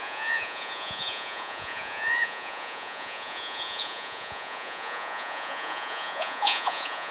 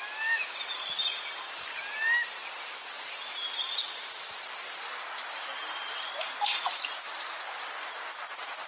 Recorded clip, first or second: second